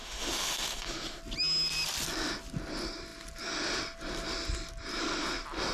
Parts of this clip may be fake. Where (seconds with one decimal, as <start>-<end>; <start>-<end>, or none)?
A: 0.0-1.2